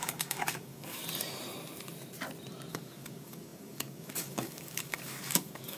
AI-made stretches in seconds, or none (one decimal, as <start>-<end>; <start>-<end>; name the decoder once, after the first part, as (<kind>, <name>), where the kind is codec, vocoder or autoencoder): 0.0-1.0 (codec, DAC); 2.7-5.8